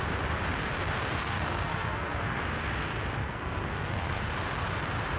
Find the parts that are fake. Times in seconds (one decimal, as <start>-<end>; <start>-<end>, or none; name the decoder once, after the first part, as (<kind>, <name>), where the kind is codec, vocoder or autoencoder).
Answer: 1.2-2.4 (codec, SNAC); 3.2-4.2